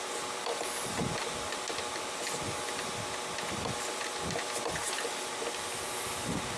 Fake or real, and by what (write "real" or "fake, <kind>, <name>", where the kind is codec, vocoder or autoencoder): real